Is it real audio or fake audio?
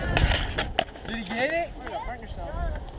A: real